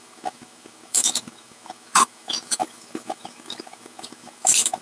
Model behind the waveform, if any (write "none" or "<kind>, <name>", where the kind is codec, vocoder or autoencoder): autoencoder, DAC-VAE